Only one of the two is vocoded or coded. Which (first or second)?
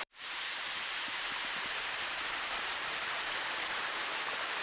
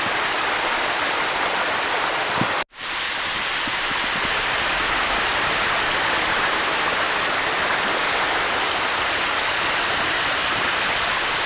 first